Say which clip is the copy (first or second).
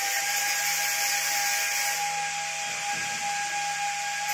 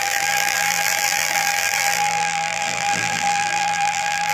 second